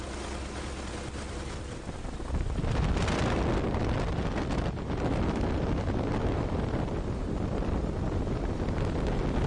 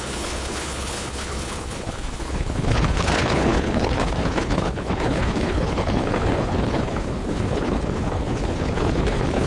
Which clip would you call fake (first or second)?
second